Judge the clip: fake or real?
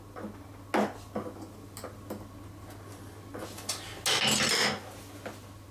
real